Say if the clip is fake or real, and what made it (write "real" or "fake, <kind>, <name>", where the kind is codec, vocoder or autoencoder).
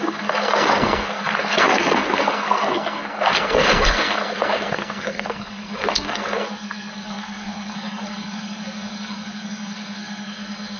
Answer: fake, codec, SNAC